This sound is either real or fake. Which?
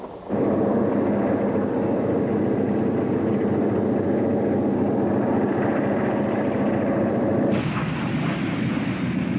real